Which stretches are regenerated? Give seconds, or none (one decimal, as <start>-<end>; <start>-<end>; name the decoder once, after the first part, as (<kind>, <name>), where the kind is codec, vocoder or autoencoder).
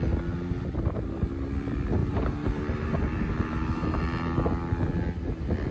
2.0-4.0 (vocoder, BigVGAN v2)